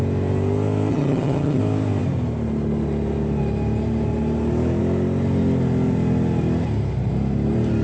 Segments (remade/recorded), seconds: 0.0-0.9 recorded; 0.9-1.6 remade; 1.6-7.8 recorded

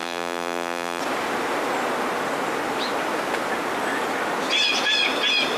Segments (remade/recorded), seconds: 0.0-1.0 remade; 1.0-5.6 recorded

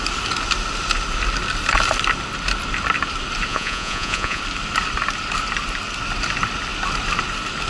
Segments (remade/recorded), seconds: 0.0-3.5 recorded; 3.5-4.4 remade; 4.4-7.7 recorded

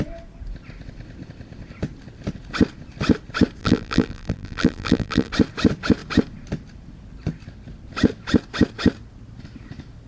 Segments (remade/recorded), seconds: 0.0-3.6 recorded; 3.6-5.3 remade; 5.3-10.1 recorded

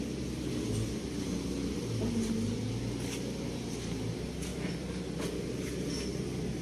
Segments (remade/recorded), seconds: 0.0-4.5 recorded; 4.5-5.0 remade; 5.0-6.6 recorded